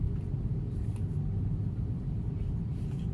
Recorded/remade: remade